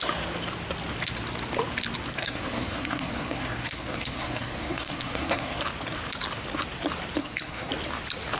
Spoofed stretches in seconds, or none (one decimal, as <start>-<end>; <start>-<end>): 2.2-5.6; 7.2-7.7